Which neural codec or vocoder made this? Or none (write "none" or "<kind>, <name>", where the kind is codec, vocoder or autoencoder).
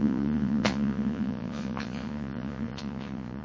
vocoder, Vocos